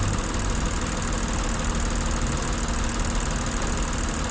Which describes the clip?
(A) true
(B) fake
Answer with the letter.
A